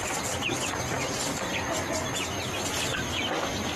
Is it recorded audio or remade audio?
recorded